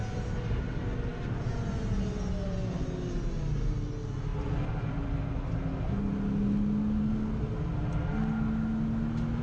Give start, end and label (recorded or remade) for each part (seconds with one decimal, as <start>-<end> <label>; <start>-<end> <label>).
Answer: 0.0-7.0 recorded; 7.0-7.5 remade; 7.5-9.4 recorded